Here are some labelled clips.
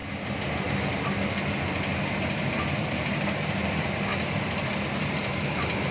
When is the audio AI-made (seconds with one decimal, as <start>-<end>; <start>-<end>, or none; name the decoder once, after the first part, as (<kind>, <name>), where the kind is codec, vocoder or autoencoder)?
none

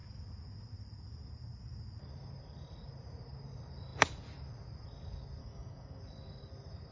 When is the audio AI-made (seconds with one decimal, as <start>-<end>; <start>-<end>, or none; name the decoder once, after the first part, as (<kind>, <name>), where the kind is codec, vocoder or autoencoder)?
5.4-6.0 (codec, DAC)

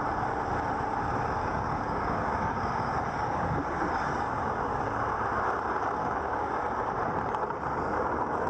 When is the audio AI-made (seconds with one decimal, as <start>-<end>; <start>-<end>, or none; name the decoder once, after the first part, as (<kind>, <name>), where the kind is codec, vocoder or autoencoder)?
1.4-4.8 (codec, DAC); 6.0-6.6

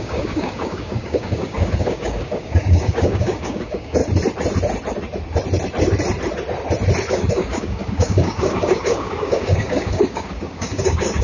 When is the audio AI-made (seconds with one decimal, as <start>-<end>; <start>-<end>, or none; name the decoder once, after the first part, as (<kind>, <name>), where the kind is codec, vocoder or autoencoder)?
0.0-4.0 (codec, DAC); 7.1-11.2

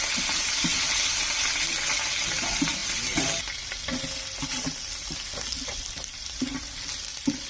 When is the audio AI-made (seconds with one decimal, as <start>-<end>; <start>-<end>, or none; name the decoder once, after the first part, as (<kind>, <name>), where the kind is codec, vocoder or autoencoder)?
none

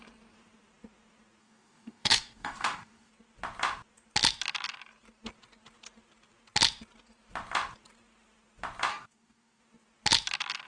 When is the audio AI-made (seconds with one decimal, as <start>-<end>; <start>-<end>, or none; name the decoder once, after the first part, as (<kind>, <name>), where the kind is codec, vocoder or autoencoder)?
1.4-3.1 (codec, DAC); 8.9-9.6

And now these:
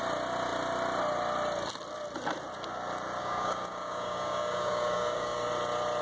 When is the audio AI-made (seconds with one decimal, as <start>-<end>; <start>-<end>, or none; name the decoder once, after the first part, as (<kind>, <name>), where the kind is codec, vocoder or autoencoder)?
3.2-5.5 (codec, DAC)